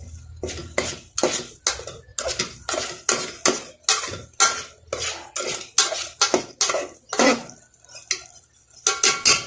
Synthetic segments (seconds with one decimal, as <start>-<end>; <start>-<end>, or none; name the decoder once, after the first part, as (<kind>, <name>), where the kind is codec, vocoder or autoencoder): none